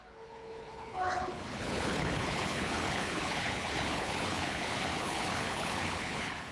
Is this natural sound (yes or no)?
no